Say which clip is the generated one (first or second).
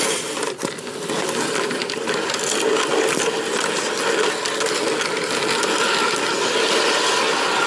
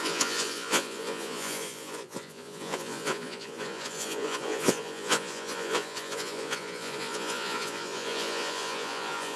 second